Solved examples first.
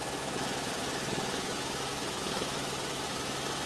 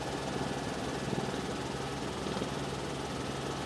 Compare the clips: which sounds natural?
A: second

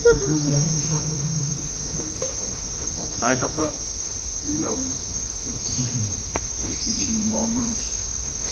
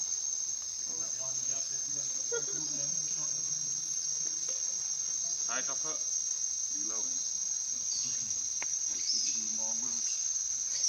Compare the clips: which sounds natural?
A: second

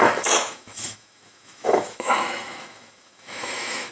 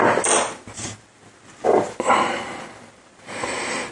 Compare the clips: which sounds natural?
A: second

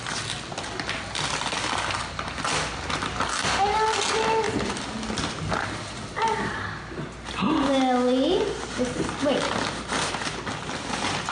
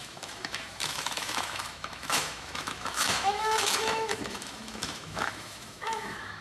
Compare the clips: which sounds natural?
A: first